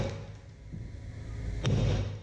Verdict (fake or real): real